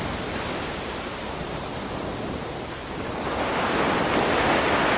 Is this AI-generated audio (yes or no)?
no